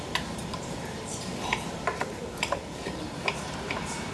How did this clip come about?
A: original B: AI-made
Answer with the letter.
B